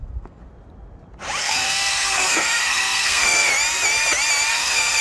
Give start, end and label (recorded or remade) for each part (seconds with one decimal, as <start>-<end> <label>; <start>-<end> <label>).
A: 0.0-0.4 remade; 0.4-1.4 recorded; 1.4-3.5 remade; 3.5-4.5 recorded; 4.5-5.0 remade